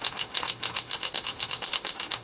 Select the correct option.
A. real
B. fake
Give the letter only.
B